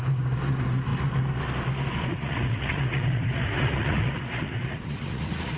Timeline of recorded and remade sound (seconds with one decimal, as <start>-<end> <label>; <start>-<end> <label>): 0.0-2.1 recorded; 2.1-5.6 remade